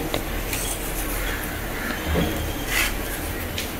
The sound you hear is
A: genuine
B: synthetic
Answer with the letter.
A